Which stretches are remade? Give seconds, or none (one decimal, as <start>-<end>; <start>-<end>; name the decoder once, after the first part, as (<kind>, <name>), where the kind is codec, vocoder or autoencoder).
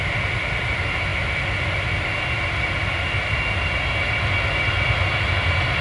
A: none